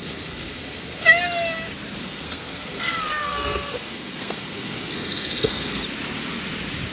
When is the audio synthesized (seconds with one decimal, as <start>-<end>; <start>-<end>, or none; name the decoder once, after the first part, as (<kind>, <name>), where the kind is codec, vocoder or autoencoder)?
0.0-1.1 (codec, SNAC); 2.0-5.8